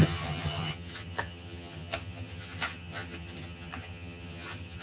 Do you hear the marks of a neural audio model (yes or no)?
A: yes